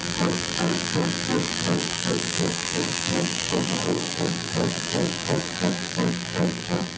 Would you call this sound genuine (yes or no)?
no